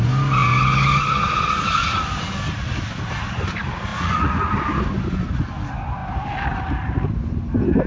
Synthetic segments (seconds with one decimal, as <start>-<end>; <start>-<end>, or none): 3.9-4.5